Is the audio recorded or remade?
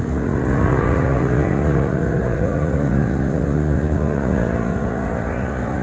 remade